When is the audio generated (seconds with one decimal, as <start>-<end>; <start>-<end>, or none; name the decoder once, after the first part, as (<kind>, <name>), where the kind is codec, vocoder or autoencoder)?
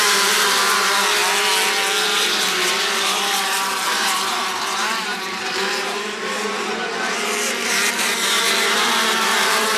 0.0-1.2 (vocoder, BigVGAN v2); 2.0-9.8